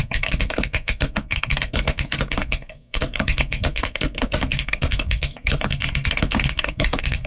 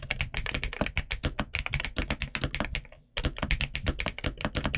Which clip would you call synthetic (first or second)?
first